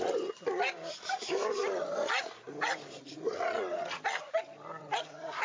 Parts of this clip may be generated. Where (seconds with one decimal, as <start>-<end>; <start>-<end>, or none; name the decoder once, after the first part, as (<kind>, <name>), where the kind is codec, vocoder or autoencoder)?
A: none